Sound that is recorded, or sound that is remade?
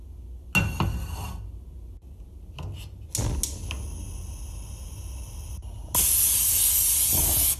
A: recorded